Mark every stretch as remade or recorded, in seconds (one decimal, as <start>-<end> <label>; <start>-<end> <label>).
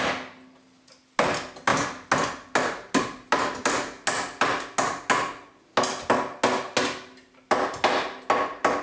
0.0-8.8 recorded